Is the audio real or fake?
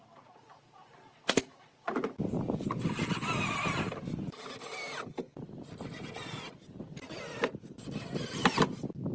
real